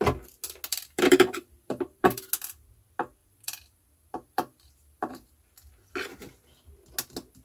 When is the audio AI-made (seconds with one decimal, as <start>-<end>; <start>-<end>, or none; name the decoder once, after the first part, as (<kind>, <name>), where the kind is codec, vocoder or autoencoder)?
0.7-2.3 (vocoder, BigVGAN v2); 3.2-5.3